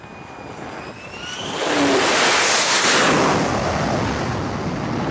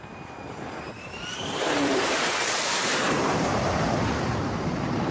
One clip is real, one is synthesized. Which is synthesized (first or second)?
second